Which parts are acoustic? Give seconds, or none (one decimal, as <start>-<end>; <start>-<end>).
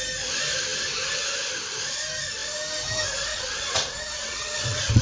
0.0-3.3